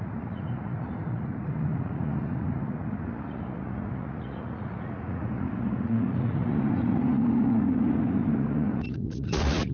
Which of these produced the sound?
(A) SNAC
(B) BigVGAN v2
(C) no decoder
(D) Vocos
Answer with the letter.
D